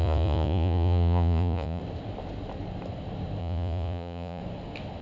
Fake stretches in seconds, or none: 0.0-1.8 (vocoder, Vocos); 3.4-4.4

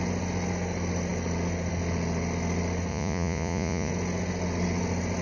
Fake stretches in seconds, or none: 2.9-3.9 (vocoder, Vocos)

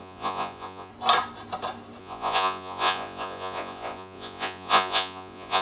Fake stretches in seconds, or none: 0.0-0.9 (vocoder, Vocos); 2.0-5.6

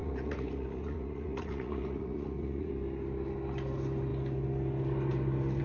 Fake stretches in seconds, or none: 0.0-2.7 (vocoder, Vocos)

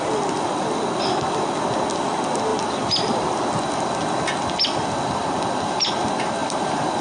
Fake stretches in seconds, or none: none

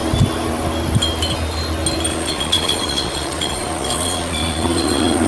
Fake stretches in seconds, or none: 2.1-5.3 (vocoder, Vocos)